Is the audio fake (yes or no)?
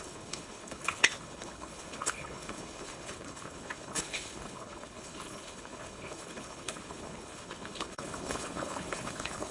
yes